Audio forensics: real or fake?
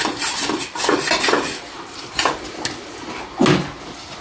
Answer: real